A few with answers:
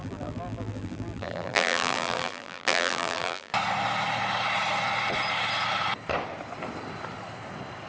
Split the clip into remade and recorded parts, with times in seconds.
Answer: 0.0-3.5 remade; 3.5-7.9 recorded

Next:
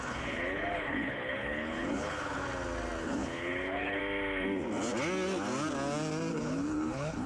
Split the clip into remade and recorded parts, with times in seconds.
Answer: 0.0-2.4 remade; 2.4-3.0 recorded; 3.0-4.0 remade; 4.0-6.3 recorded; 6.3-7.3 remade

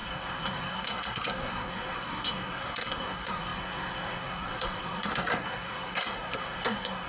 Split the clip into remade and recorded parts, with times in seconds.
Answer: 0.0-7.1 remade

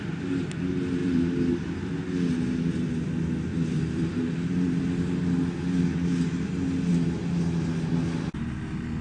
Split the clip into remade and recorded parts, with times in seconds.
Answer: 0.0-1.0 recorded; 1.0-1.5 remade; 1.5-3.5 recorded; 3.5-4.8 remade; 4.8-9.0 recorded